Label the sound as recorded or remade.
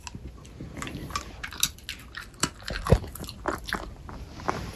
recorded